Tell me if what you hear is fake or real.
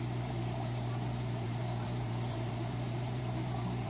fake